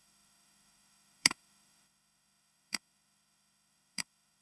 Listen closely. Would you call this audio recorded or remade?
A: remade